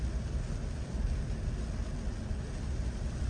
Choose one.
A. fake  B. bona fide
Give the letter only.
B